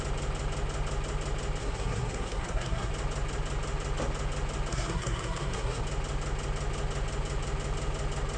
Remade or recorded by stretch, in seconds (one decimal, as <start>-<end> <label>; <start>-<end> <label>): 0.0-1.6 recorded; 1.6-2.9 remade; 2.9-4.7 recorded; 4.7-5.8 remade; 5.8-8.4 recorded